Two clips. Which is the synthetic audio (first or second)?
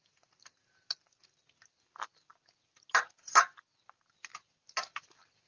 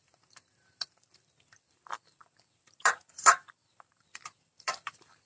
second